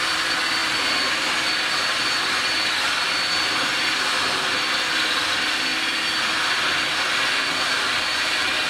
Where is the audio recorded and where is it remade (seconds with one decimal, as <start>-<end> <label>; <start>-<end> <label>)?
0.0-0.6 remade; 0.6-5.2 recorded; 5.2-5.7 remade; 5.7-7.6 recorded; 7.6-8.7 remade